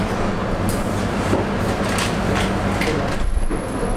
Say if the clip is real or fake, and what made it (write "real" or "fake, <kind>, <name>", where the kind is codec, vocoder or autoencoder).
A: real